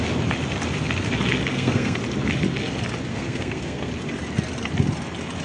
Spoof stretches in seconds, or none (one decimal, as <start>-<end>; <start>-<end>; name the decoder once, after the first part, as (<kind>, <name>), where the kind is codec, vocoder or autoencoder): 1.5-2.0 (codec, SNAC); 3.1-3.9